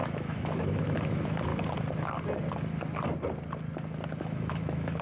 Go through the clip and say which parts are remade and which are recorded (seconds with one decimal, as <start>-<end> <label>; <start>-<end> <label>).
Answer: 0.0-1.5 remade; 1.5-4.2 recorded; 4.2-5.0 remade